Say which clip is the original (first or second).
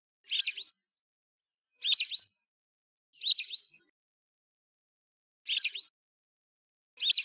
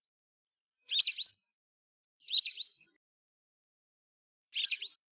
first